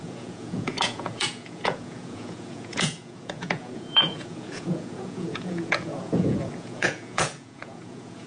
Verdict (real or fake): fake